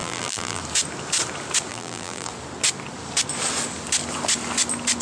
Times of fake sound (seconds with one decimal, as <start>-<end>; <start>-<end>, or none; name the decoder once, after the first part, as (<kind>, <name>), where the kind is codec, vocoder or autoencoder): 0.0-0.6 (vocoder, BigVGAN v2); 1.7-2.3